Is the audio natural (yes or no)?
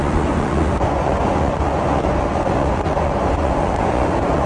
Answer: no